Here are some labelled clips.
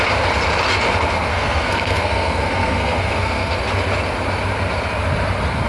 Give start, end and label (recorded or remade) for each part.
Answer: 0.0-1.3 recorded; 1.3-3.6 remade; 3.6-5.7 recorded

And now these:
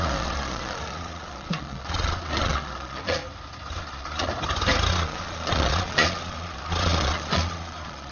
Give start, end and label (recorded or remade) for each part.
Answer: 0.0-3.2 remade; 3.2-3.8 recorded; 3.8-4.3 remade; 4.3-4.9 recorded; 4.9-8.1 remade

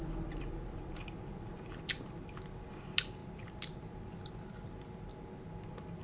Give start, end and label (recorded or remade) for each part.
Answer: 0.0-1.9 remade; 1.9-3.2 recorded; 3.2-4.3 remade; 4.3-6.0 recorded

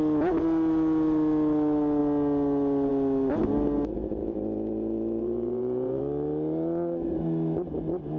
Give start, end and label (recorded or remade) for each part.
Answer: 0.0-4.2 recorded; 4.2-6.0 remade; 6.0-8.2 recorded

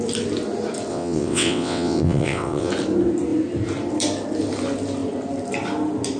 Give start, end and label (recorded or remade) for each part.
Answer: 0.0-0.9 recorded; 0.9-2.7 remade; 2.7-6.2 recorded

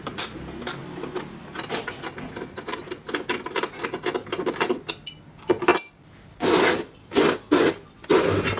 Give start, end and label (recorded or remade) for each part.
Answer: 0.0-8.6 recorded

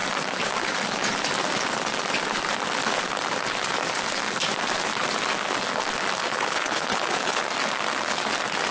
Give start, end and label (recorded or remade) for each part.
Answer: 0.0-6.2 recorded; 6.2-7.4 remade; 7.4-8.7 recorded

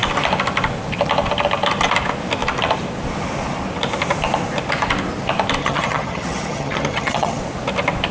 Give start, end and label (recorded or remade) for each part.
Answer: 0.0-5.6 recorded; 5.6-7.4 remade; 7.4-8.1 recorded